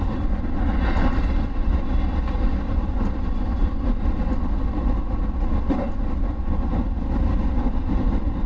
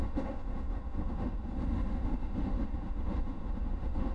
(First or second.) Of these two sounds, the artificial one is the second